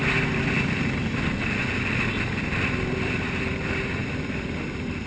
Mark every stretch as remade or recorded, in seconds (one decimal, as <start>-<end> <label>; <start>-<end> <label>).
0.0-5.1 recorded